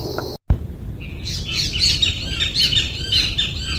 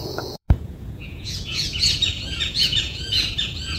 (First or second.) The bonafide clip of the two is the first